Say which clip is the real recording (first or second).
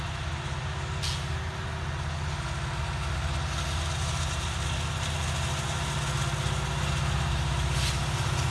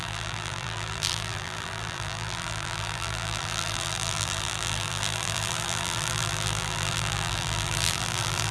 first